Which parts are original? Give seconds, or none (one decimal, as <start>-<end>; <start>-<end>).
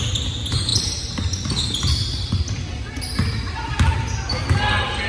0.0-5.1